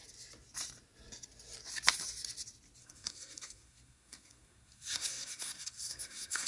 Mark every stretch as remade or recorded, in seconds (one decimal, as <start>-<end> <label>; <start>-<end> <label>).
0.0-2.8 recorded; 2.8-6.5 remade